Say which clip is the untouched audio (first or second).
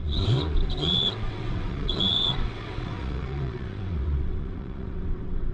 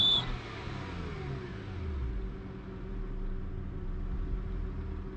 second